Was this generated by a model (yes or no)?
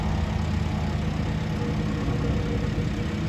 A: no